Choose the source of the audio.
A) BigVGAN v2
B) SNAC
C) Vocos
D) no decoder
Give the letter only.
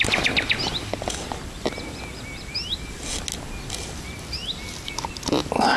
D